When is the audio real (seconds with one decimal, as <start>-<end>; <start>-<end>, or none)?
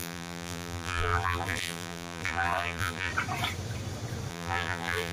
3.1-4.3